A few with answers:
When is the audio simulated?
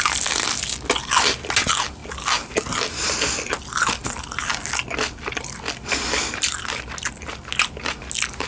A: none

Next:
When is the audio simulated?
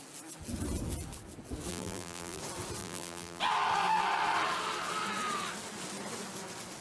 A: 1.7-2.4 (vocoder, BigVGAN v2); 2.8-3.4